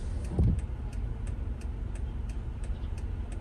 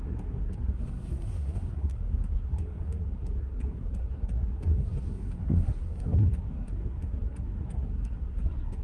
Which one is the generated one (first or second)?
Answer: second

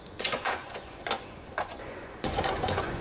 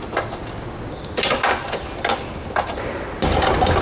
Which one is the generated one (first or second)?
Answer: first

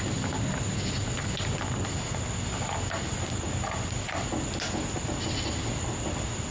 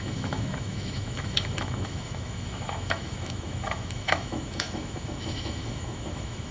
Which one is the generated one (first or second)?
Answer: second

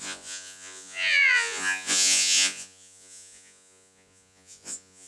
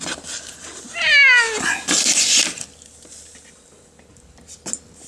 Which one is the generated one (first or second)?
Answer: first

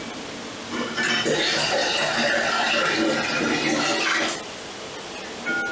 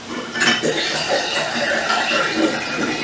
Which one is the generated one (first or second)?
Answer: second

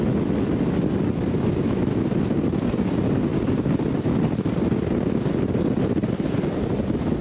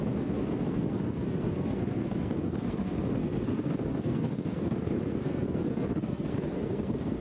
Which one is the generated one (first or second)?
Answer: second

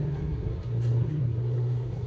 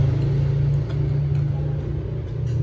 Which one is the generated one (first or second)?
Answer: first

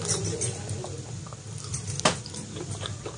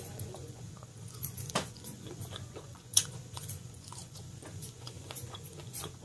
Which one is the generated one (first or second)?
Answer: second